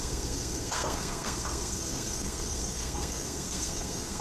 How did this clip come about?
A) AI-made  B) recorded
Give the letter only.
A